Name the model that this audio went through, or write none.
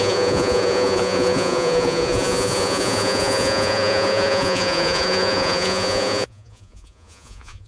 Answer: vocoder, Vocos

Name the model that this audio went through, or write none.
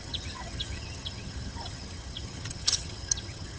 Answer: vocoder, HiFi-GAN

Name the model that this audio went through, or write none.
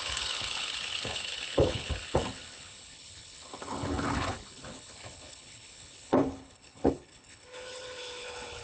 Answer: codec, HILCodec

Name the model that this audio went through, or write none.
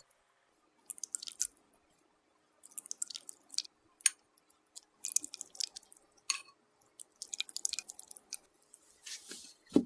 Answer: none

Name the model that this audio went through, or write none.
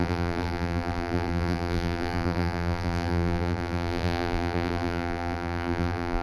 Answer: vocoder, BigVGAN v2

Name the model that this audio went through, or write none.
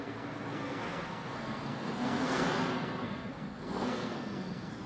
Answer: codec, SNAC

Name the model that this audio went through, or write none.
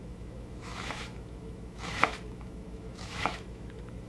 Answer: autoencoder, DAC-VAE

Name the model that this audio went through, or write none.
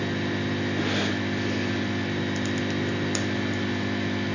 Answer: none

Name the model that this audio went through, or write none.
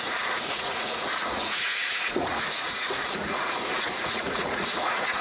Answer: vocoder, Vocos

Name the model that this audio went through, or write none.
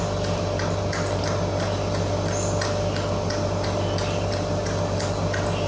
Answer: none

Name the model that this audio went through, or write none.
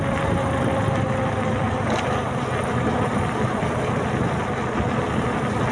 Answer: none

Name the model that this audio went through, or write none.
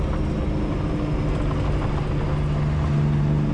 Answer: none